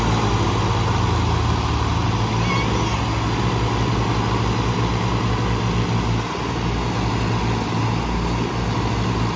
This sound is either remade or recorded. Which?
recorded